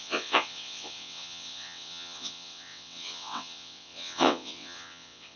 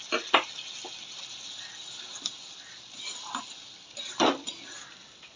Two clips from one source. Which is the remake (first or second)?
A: first